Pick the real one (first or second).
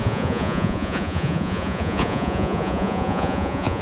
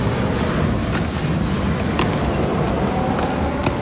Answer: second